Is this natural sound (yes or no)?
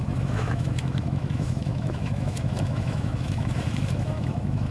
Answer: no